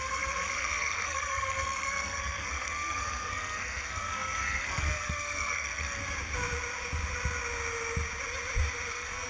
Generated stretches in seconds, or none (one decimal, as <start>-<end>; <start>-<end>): 0.0-6.0; 8.9-9.3